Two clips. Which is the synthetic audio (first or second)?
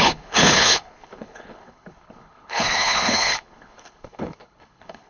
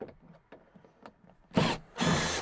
first